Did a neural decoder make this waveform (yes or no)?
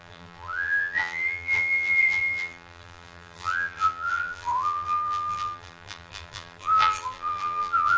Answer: yes